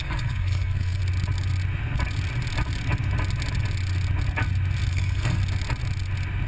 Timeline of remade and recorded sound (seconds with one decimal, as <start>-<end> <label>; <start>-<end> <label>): 0.0-1.0 remade; 1.0-4.9 recorded; 4.9-5.4 remade; 5.4-6.5 recorded